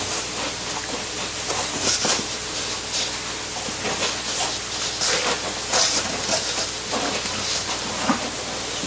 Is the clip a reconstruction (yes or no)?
no